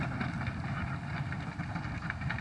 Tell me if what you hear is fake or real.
real